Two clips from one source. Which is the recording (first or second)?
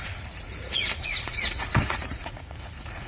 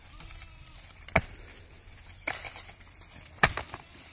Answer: second